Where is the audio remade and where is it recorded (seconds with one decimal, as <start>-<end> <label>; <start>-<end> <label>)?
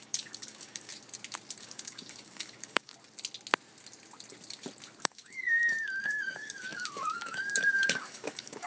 0.0-0.9 remade; 0.9-1.6 recorded; 1.6-2.9 remade; 2.9-5.0 recorded; 5.0-8.7 remade